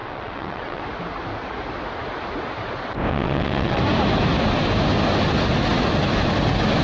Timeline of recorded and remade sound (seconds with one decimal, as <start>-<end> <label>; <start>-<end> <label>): 0.0-0.8 remade; 0.8-3.1 recorded; 3.1-3.8 remade; 3.8-6.8 recorded